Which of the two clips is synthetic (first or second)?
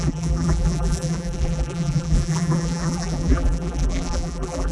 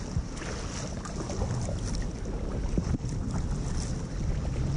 first